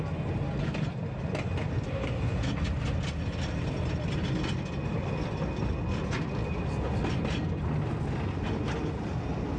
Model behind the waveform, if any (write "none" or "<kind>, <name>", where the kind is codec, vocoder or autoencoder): none